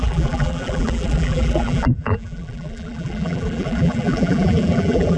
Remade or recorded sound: remade